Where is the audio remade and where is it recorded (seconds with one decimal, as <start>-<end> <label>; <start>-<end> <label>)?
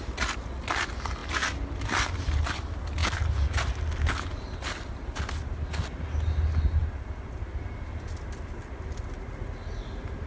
0.0-10.3 recorded